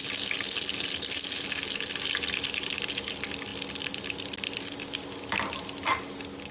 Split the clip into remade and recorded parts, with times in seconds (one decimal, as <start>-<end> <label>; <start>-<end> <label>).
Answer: 0.0-6.5 recorded